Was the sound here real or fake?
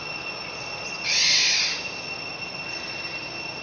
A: real